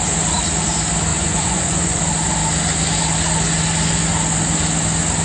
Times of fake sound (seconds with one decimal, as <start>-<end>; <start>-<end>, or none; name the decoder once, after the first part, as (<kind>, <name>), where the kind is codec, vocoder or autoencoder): 1.1-2.0 (vocoder, Vocos)